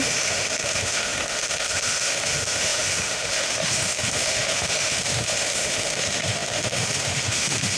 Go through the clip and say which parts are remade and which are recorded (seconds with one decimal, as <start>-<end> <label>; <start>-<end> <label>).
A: 0.0-7.8 remade